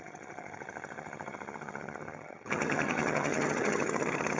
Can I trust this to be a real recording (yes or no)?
no